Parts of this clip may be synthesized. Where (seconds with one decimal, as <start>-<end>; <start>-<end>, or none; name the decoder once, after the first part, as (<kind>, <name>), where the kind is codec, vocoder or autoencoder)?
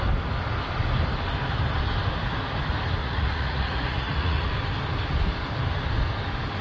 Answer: 3.0-4.5 (vocoder, Vocos)